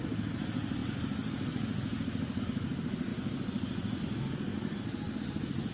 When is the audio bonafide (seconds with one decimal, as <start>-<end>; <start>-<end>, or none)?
0.0-5.7